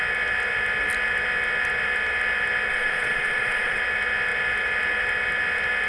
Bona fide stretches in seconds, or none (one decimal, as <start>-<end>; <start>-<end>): 0.0-2.7; 3.8-5.9